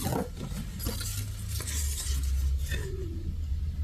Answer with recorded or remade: recorded